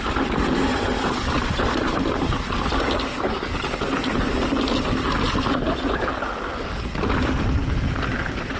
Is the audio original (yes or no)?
yes